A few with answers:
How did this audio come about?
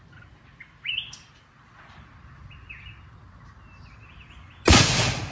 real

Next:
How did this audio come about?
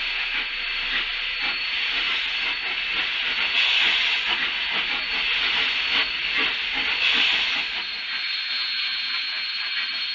real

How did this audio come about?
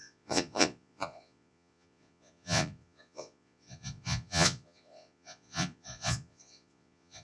fake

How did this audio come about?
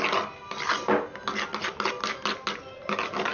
real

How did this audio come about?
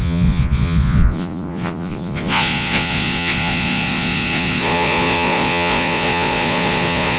fake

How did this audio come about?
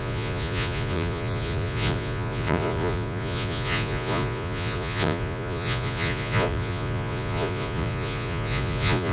fake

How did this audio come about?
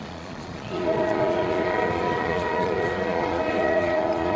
fake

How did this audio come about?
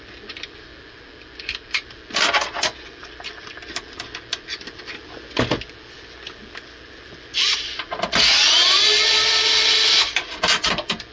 real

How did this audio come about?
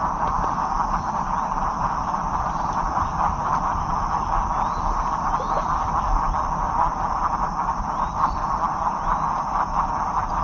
real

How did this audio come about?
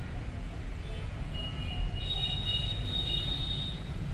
fake